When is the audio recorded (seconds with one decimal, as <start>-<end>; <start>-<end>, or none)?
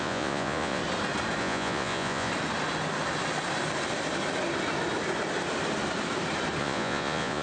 0.8-1.4; 2.3-6.6